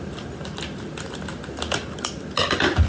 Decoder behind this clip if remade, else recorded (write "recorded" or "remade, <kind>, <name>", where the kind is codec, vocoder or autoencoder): recorded